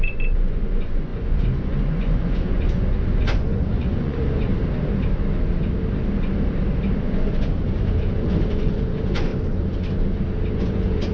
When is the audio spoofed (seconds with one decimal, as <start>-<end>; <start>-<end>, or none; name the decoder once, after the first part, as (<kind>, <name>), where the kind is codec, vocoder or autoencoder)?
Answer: 0.0-4.5 (vocoder, Vocos); 7.0-9.3; 10.5-11.1